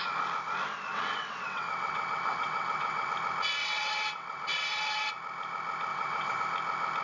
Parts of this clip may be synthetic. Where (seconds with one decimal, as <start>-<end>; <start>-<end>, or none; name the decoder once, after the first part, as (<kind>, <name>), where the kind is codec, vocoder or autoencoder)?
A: 0.9-3.1 (vocoder, WaveNeXt); 3.6-5.1; 5.9-6.4